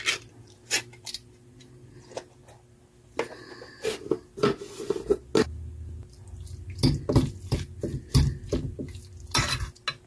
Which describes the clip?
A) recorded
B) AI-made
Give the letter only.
A